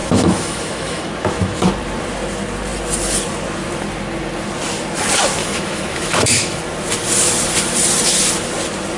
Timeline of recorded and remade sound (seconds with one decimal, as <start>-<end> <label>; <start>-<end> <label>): 0.0-1.7 remade; 1.7-5.4 recorded; 5.4-6.6 remade; 6.6-9.0 recorded